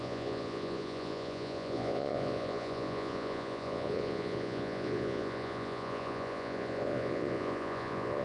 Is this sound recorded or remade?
remade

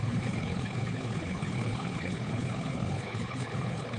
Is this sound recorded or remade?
remade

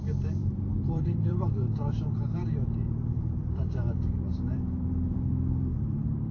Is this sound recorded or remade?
remade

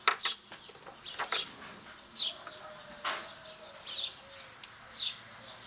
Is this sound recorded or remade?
recorded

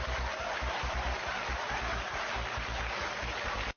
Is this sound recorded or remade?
recorded